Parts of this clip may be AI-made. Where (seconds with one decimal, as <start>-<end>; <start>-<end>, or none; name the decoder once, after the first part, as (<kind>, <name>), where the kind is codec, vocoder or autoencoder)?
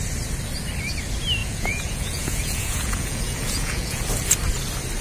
1.4-4.0 (vocoder, Vocos)